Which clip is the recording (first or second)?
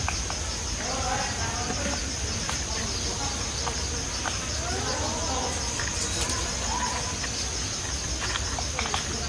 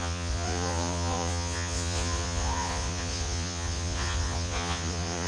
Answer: first